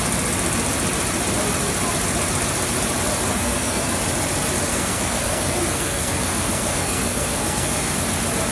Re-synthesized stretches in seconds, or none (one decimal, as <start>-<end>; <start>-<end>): 3.3-3.9; 4.7-8.0